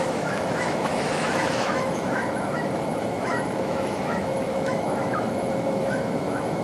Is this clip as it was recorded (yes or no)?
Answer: no